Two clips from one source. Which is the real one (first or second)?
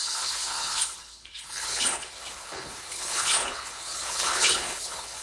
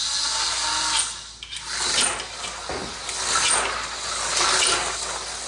second